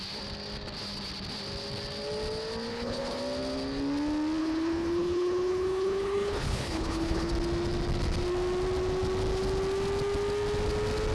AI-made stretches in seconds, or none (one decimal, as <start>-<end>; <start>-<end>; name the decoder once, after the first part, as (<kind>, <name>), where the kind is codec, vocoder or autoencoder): 2.7-3.2 (codec, HILCodec); 4.4-7.3